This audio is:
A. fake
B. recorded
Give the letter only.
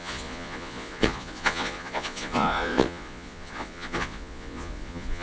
A